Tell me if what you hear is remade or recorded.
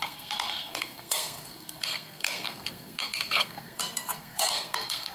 remade